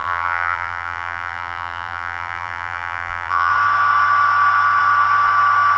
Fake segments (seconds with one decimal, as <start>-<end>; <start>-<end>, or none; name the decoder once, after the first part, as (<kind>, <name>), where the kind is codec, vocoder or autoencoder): 0.0-3.5 (vocoder, BigVGAN v2)